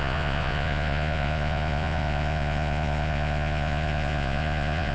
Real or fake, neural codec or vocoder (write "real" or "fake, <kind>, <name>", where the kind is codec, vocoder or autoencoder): fake, vocoder, Vocos